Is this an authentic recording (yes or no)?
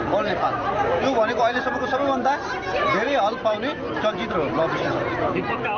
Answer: yes